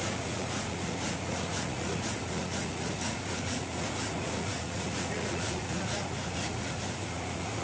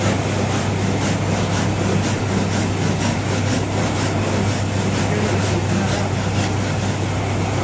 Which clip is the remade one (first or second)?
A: first